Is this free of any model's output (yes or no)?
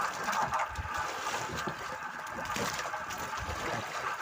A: yes